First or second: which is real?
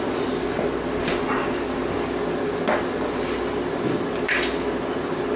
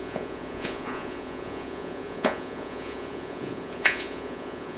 first